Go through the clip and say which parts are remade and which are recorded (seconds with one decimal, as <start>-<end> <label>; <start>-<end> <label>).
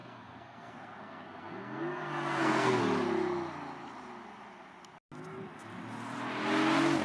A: 0.0-2.8 remade; 2.8-7.0 recorded